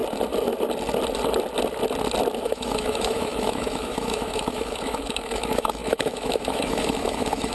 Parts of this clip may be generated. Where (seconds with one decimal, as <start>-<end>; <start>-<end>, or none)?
2.4-7.5